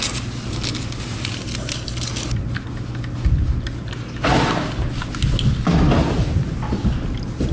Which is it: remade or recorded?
recorded